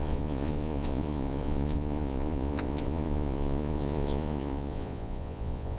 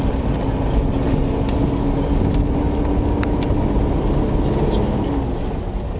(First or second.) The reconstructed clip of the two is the first